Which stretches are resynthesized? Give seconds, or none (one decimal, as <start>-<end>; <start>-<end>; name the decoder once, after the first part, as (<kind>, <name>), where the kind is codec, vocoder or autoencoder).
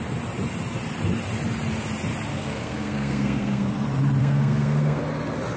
2.3-3.7 (codec, SNAC); 4.2-5.0